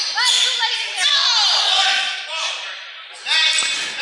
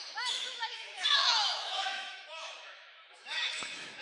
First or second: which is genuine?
first